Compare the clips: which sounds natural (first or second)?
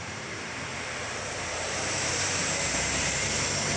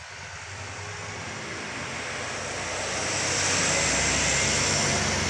second